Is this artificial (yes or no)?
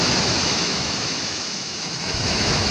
yes